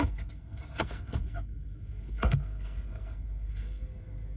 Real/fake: fake